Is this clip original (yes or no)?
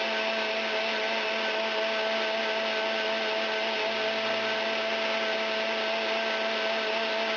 yes